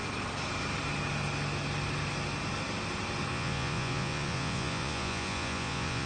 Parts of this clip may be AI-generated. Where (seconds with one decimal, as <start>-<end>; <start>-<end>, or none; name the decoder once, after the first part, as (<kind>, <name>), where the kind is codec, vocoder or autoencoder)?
3.3-6.1 (vocoder, Vocos)